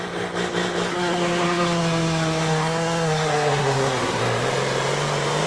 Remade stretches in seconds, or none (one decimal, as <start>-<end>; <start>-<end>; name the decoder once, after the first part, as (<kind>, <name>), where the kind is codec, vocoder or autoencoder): 0.9-4.2 (codec, SNAC)